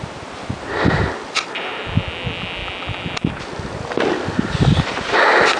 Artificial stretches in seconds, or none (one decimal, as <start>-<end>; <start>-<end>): none